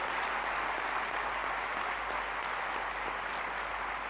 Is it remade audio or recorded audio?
recorded